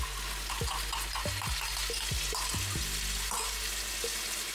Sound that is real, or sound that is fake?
real